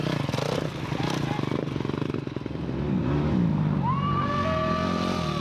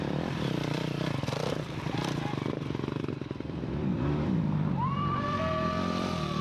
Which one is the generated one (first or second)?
second